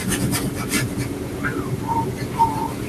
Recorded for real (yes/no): yes